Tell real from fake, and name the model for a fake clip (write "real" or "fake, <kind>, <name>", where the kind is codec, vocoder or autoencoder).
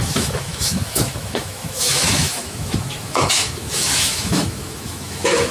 fake, autoencoder, DAC-VAE